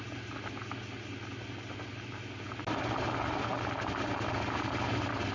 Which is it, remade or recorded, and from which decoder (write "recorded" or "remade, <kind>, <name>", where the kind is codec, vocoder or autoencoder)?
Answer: recorded